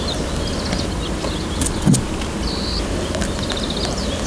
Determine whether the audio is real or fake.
real